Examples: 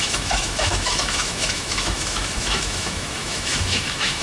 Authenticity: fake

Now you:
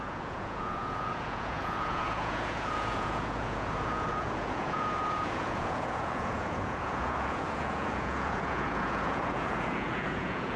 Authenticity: fake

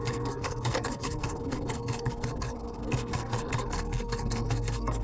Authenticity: fake